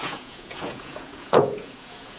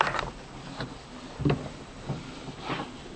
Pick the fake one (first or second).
first